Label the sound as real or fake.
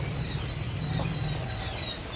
real